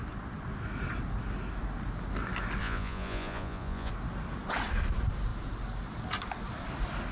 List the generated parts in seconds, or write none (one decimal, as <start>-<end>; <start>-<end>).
2.6-3.9